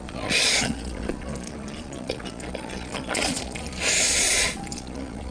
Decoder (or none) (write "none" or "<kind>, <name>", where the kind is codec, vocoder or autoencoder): vocoder, Vocos